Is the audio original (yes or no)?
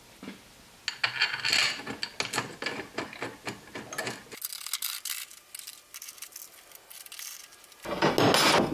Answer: yes